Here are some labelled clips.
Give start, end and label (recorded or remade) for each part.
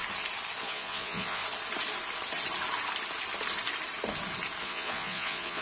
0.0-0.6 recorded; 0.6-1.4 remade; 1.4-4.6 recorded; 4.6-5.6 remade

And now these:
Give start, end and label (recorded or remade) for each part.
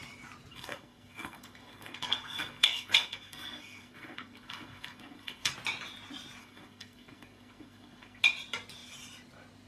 0.0-0.5 recorded; 0.5-5.5 remade; 5.5-6.4 recorded; 6.4-8.2 remade; 8.2-9.7 recorded